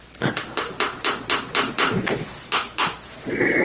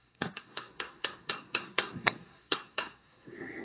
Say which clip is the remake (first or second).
second